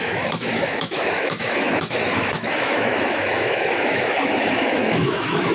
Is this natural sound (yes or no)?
no